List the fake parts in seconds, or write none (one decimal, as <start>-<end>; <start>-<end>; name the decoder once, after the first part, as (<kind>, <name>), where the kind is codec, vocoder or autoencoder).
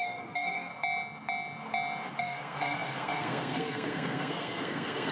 0.0-0.7 (codec, SNAC); 2.2-5.1